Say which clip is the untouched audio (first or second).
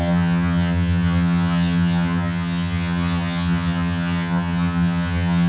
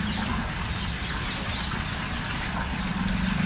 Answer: second